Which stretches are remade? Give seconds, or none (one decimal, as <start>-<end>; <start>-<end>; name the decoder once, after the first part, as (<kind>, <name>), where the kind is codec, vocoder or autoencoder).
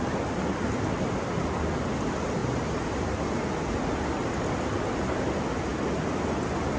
none